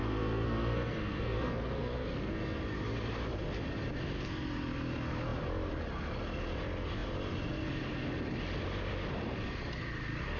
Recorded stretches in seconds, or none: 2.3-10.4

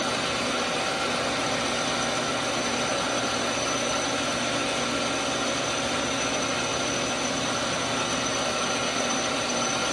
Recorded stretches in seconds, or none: 0.0-9.9